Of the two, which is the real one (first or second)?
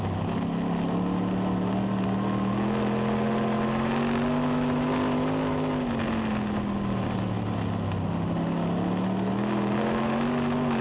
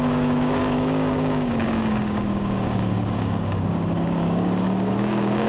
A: first